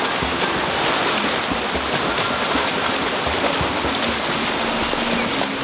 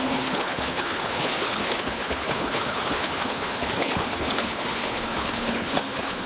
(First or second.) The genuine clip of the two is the first